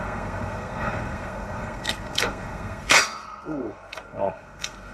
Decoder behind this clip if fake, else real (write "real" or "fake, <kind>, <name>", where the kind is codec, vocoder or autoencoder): fake, codec, SNAC